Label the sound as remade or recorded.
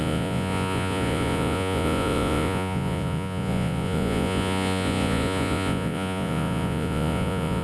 remade